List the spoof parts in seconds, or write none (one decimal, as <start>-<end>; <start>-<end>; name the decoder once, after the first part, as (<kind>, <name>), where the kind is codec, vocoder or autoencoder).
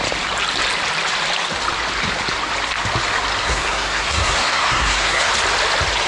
3.4-5.3 (codec, SNAC)